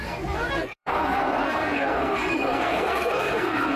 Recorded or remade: remade